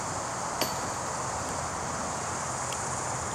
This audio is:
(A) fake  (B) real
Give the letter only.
B